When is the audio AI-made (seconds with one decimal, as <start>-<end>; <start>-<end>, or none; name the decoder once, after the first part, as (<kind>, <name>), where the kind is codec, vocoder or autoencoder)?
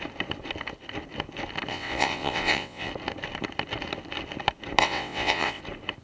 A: 1.7-2.9 (vocoder, WaveNeXt); 4.8-5.6